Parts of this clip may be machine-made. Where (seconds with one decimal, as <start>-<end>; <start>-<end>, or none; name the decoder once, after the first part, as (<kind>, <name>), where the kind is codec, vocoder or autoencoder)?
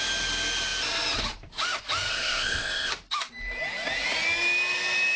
2.1-2.9 (codec, ZipCodec)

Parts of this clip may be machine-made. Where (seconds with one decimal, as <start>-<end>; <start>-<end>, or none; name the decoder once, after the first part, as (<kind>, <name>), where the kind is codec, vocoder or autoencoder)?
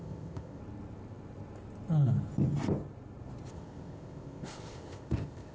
0.0-0.6 (codec, ZipCodec); 3.5-5.5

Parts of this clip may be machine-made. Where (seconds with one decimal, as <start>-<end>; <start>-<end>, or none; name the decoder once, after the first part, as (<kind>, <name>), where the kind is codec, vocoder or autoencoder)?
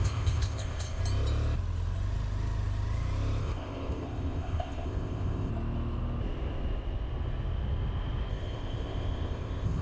0.0-1.0 (codec, ZipCodec); 3.4-5.5; 8.3-9.8